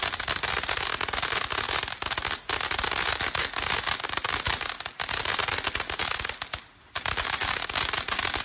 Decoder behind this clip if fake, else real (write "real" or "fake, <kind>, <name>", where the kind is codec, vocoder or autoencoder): real